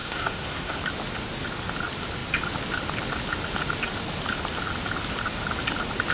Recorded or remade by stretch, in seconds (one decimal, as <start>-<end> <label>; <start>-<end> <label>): 0.0-0.8 remade; 0.8-6.1 recorded